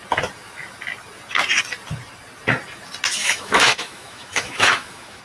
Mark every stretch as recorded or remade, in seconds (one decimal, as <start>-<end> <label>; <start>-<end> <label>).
0.0-3.2 recorded; 3.2-5.2 remade